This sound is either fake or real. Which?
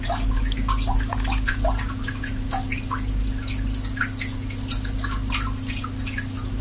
real